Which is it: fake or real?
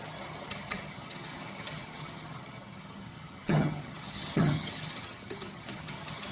fake